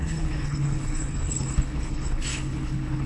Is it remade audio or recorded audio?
remade